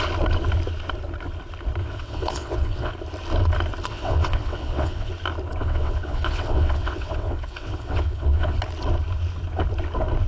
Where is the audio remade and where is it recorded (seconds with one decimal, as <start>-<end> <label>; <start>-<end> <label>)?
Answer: 0.0-1.8 recorded; 1.8-2.9 remade; 2.9-3.9 recorded; 3.9-5.1 remade; 5.1-5.6 recorded; 5.6-8.6 remade; 8.6-10.3 recorded

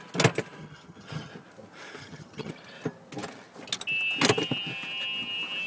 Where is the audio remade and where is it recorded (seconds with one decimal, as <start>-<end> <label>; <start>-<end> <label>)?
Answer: 0.0-0.6 recorded; 0.6-1.3 remade; 1.3-2.0 recorded; 2.0-2.5 remade; 2.5-5.7 recorded

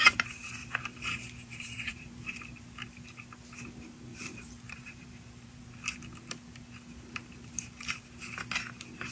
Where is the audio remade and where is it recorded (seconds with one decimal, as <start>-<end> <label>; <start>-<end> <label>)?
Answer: 0.0-0.6 recorded; 0.6-2.3 remade; 2.3-4.1 recorded; 4.1-5.6 remade; 5.6-9.1 recorded

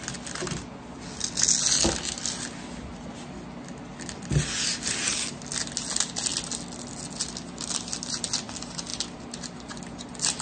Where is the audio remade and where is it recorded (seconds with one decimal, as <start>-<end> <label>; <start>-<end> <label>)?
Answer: 0.0-10.4 recorded